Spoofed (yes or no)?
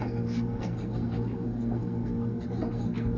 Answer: yes